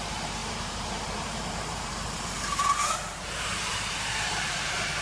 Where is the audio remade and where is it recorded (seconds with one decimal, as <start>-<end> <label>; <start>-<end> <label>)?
0.0-5.0 remade